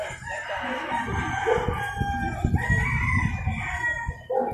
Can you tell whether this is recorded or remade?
recorded